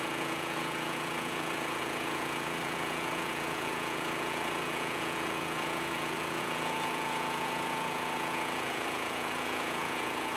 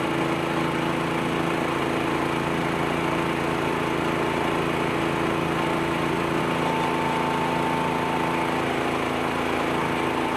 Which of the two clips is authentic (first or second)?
second